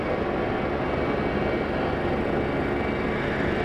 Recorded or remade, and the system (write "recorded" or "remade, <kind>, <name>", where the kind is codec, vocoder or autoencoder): recorded